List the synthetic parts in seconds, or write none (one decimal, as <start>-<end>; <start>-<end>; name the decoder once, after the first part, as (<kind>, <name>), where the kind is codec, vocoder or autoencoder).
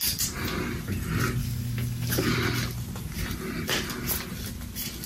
1.4-2.3 (codec, DAC)